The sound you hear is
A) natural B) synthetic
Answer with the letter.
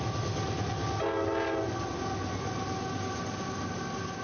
A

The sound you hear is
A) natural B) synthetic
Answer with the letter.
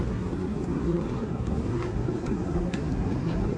B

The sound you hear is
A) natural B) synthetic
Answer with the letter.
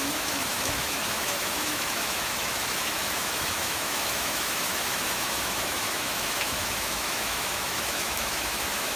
B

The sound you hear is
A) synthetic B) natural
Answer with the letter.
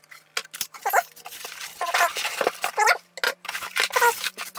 B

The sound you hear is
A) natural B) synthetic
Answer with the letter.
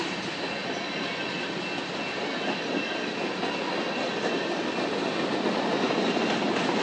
A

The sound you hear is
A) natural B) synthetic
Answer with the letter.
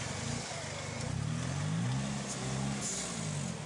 A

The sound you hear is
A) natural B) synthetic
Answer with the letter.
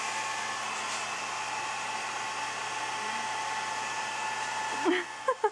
A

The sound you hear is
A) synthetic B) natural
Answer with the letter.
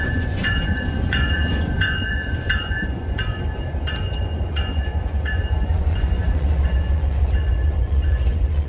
A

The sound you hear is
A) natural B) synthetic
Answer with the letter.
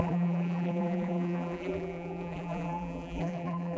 B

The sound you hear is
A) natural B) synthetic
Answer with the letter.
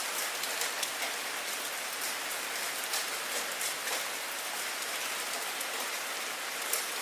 A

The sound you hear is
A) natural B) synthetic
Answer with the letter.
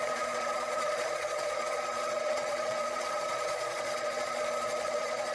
B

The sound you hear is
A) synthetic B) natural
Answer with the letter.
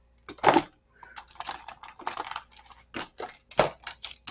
B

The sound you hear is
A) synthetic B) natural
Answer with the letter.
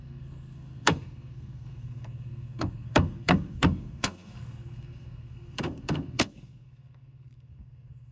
A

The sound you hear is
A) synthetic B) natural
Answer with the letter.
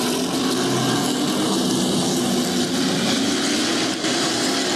B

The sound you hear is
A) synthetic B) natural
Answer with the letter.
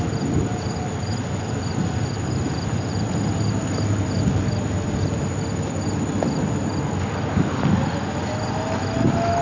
B